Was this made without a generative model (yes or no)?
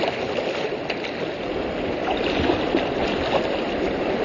yes